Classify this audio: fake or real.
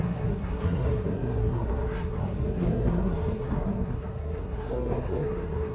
fake